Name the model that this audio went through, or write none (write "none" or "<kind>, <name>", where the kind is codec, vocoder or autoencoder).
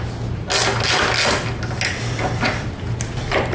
none